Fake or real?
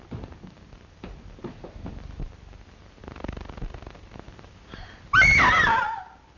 fake